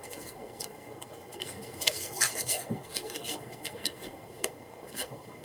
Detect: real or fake fake